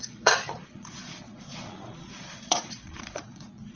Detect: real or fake fake